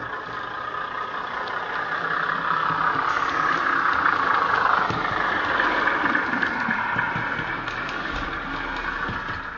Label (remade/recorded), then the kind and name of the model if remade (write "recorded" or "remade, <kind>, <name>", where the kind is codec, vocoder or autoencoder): recorded